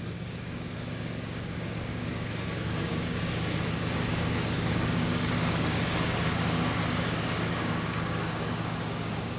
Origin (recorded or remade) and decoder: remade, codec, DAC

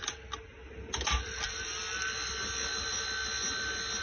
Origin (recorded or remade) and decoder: recorded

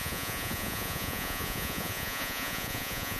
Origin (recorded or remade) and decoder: remade, vocoder, Vocos